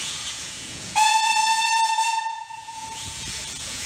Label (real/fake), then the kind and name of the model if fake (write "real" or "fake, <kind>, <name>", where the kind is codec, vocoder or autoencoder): fake, vocoder, Vocos